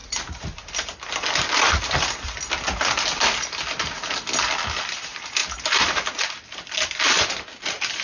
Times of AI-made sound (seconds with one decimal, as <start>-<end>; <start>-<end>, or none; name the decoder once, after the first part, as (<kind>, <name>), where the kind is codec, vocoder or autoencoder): none

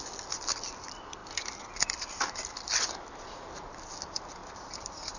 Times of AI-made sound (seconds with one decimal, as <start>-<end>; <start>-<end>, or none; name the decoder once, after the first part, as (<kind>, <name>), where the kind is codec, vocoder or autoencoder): 4.4-5.2 (vocoder, BigVGAN v2)

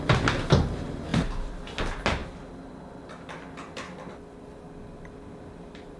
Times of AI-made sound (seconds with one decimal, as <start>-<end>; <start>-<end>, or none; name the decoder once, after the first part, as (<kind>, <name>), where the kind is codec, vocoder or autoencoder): none

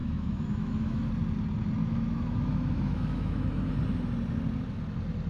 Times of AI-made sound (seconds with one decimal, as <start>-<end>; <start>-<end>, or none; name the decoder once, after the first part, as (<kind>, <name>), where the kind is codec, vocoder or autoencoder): 0.0-1.1 (autoencoder, DAC-VAE); 1.8-3.7

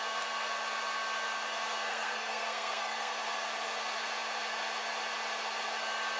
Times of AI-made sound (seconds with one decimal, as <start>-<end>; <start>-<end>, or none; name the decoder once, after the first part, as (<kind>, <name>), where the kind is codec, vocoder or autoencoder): 1.9-3.1 (codec, SNAC)